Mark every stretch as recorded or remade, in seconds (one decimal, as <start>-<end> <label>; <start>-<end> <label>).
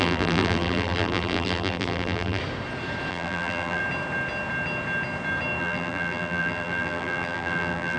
0.0-2.4 remade; 2.4-3.1 recorded; 3.1-3.8 remade; 3.8-5.6 recorded; 5.6-8.0 remade